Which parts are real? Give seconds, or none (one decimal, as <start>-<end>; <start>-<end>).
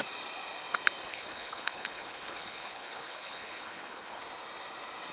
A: 0.0-1.1; 4.2-5.1